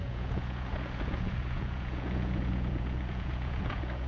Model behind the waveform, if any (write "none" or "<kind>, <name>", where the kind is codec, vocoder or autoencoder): vocoder, Vocos